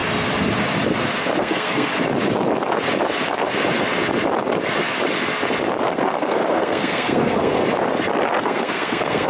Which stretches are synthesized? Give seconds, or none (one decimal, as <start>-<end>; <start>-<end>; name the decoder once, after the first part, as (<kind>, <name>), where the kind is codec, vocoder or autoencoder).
1.4-1.9 (codec, SNAC); 5.9-7.6; 8.4-9.3